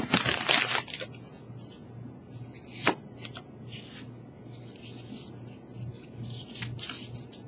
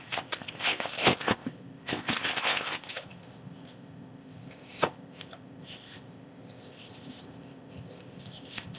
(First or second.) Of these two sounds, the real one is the first